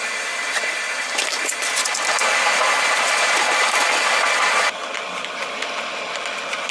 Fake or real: real